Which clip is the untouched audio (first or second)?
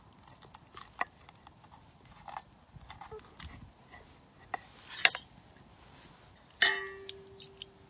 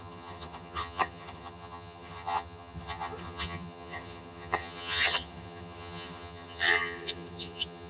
first